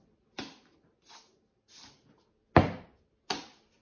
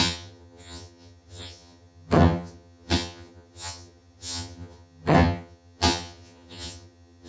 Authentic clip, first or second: first